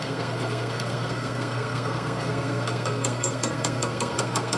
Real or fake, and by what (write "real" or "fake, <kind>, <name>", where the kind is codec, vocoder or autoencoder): fake, codec, SNAC